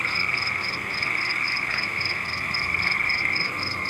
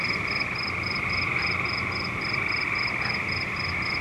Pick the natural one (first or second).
second